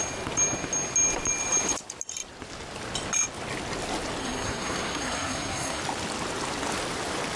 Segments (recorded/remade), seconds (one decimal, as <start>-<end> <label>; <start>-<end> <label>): 0.0-4.2 recorded; 4.2-5.8 remade; 5.8-7.4 recorded